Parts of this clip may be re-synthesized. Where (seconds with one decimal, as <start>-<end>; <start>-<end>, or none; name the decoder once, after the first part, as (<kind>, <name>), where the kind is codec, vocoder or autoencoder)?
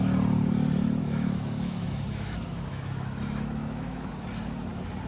1.0-4.1 (autoencoder, DAC-VAE)